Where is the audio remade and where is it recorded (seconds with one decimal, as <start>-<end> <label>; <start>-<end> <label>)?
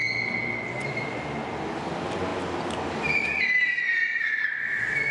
0.0-5.1 recorded